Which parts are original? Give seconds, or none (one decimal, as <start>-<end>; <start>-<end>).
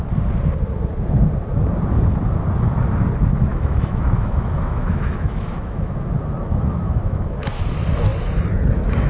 0.0-3.5; 5.9-6.4; 7.6-9.1